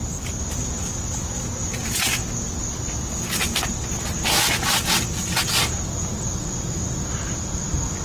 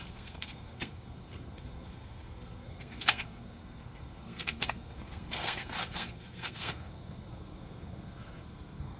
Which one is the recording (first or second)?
first